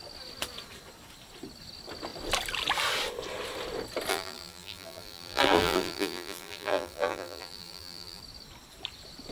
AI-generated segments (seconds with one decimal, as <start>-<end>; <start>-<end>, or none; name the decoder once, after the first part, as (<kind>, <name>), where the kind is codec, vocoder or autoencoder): 4.1-8.2 (vocoder, BigVGAN v2)